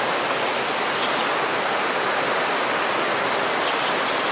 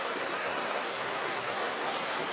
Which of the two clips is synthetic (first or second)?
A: second